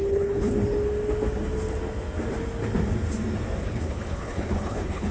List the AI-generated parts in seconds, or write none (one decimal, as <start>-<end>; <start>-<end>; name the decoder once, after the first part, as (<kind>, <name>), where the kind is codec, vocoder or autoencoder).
0.0-0.5 (codec, HILCodec); 3.6-5.1